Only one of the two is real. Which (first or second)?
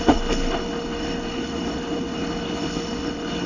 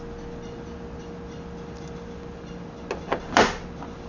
second